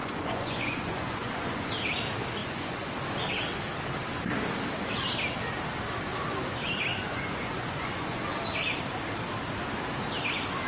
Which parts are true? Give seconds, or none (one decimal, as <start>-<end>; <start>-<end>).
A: 1.7-2.4; 2.9-6.9; 8.3-10.7